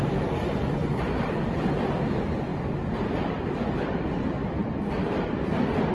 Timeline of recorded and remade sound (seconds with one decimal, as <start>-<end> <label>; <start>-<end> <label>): 0.0-0.8 recorded; 0.8-1.7 remade; 1.7-2.5 recorded; 2.5-4.0 remade; 4.0-5.9 recorded